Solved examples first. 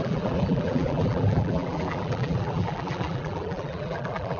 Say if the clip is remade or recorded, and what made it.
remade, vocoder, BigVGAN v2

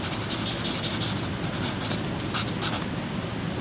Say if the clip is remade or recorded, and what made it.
recorded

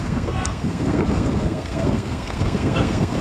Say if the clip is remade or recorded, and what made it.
remade, codec, SNAC